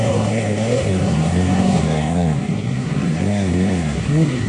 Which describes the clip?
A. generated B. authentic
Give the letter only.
A